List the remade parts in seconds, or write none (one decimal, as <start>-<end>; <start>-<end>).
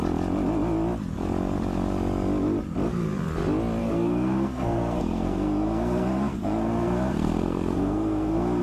3.8-8.6